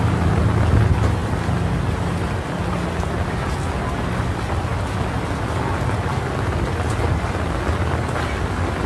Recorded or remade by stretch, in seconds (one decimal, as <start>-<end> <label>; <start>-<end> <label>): 0.0-8.9 recorded